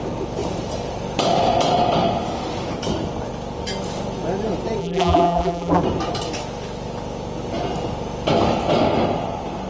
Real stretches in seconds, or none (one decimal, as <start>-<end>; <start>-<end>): 0.0-4.8; 5.8-9.7